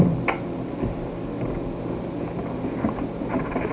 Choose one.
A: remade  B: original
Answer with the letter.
B